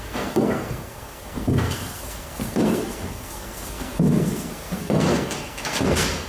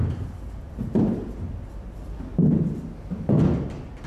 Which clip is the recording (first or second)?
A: second